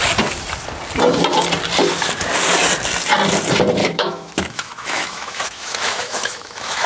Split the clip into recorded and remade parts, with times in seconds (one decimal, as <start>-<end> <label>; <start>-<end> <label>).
0.0-3.8 recorded; 3.8-6.9 remade